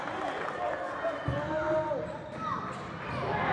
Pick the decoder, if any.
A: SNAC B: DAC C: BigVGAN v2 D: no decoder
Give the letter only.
D